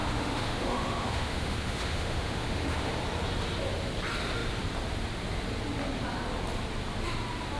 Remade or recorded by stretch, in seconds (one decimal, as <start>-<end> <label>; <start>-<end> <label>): 0.0-3.0 remade; 3.0-7.6 recorded